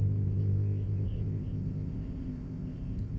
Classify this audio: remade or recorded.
remade